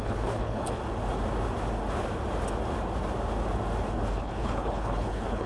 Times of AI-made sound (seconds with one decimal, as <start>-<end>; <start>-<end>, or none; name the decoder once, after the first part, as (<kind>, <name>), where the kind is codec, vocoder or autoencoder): 0.0-0.8 (codec, HILCodec); 4.1-5.5